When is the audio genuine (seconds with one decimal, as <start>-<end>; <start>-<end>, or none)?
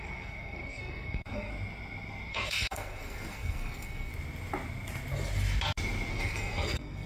1.5-2.3; 4.1-6.1